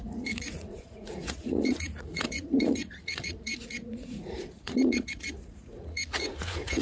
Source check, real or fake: fake